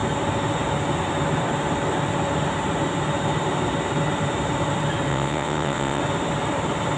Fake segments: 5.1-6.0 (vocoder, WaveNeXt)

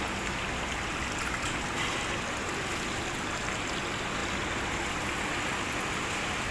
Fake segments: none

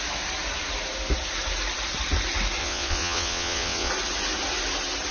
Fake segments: 2.6-3.9 (vocoder, WaveNeXt)

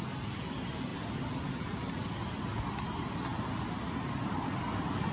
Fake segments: none

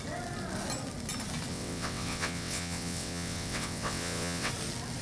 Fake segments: 1.5-4.5 (vocoder, WaveNeXt)